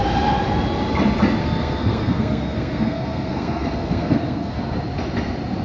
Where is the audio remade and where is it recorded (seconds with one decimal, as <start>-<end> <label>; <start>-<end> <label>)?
0.0-1.4 recorded; 1.4-4.6 remade; 4.6-5.6 recorded